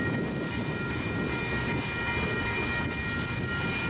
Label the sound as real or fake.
real